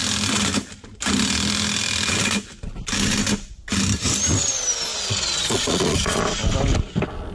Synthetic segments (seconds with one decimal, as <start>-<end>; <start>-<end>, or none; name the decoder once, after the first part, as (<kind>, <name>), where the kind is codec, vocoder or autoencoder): 4.9-6.2 (vocoder, Vocos)